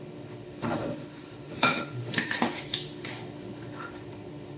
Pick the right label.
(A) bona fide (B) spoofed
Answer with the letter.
B